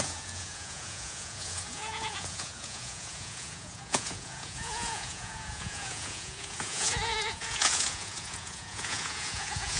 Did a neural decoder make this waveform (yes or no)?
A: yes